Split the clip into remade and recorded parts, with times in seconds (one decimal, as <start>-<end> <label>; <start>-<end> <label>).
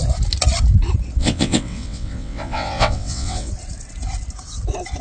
0.0-1.2 recorded; 1.2-3.5 remade; 3.5-5.0 recorded